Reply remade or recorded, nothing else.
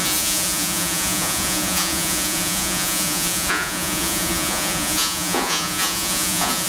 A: remade